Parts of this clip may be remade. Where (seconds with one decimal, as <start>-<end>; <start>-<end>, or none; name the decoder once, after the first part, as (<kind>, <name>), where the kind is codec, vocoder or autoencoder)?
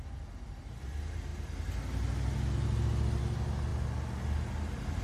none